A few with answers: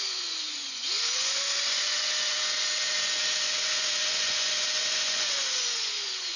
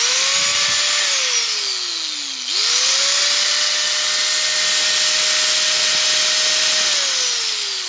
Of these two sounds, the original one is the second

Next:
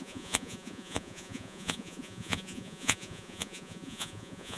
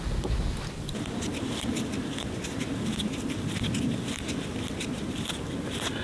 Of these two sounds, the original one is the second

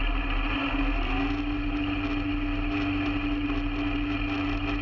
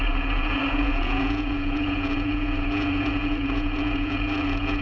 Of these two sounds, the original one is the first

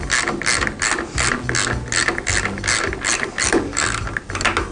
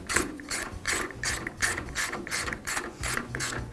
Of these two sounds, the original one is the first